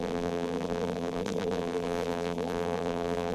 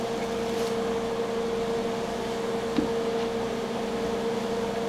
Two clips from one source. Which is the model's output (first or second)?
first